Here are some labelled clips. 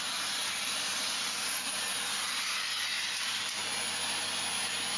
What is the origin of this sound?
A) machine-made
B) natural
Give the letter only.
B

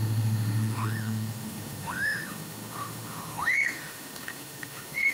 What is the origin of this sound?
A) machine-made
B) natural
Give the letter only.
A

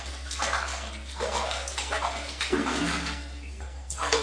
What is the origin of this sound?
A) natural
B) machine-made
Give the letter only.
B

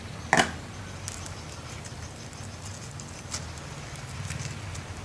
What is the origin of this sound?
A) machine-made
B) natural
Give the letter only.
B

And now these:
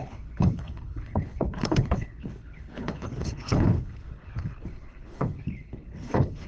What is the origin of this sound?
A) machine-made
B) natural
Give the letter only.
A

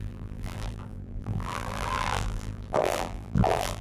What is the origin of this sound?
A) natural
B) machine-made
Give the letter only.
B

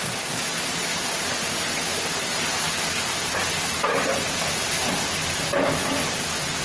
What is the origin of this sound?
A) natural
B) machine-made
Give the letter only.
A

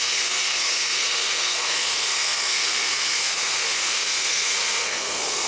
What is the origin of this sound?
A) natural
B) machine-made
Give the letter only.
B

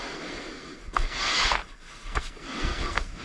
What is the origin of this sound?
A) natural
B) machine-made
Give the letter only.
B